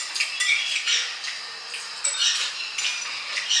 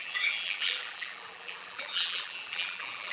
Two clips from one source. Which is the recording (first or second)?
first